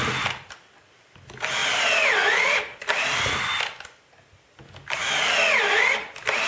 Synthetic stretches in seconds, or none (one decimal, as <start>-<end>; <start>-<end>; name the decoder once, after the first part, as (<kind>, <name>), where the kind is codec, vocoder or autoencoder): 1.6-4.0 (vocoder, BigVGAN v2)